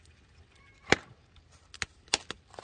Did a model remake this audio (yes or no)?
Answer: no